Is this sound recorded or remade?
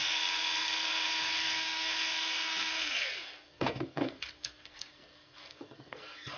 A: remade